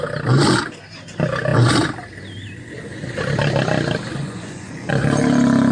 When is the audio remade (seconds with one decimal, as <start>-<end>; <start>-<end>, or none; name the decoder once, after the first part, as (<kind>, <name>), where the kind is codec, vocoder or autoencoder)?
4.1-4.9 (vocoder, Vocos)